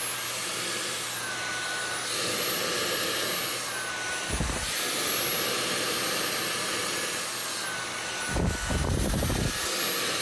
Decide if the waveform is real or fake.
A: real